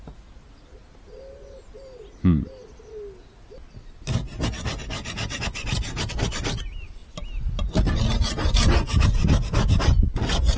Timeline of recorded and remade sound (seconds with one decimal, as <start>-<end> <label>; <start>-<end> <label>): 0.0-10.6 recorded

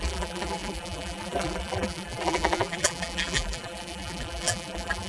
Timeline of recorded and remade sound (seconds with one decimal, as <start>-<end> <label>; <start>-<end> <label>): 0.0-5.1 remade

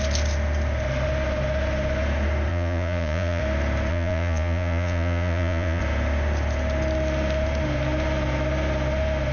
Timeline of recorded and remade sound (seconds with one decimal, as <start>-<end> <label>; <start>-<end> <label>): 0.0-2.5 recorded; 2.5-3.4 remade; 3.4-3.9 recorded; 3.9-5.8 remade; 5.8-9.3 recorded

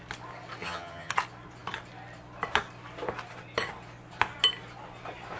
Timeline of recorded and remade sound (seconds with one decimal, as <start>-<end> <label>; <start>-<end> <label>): 0.0-0.6 recorded; 0.6-1.1 remade; 1.1-5.4 recorded

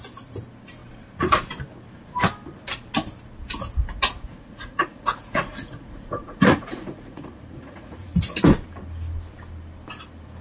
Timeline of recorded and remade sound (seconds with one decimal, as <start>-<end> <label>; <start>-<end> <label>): 0.0-4.3 recorded; 4.3-8.4 remade; 8.4-10.4 recorded

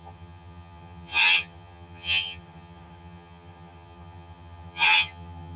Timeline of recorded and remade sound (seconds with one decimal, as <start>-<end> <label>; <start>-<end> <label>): 0.0-5.6 remade